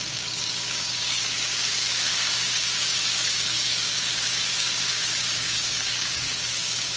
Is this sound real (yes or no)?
no